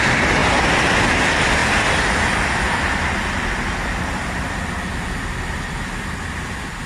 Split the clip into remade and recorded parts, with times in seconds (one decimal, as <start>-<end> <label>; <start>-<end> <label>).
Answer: 0.0-0.4 remade; 0.4-1.2 recorded; 1.2-1.6 remade; 1.6-2.6 recorded; 2.6-4.9 remade; 4.9-6.1 recorded; 6.1-6.9 remade